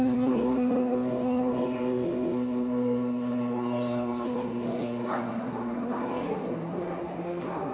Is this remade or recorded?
remade